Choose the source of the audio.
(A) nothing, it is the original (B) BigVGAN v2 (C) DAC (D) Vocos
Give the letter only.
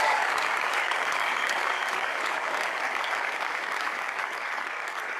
C